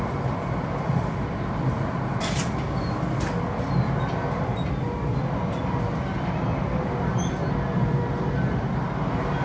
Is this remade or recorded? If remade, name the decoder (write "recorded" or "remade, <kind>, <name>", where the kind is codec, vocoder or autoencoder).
recorded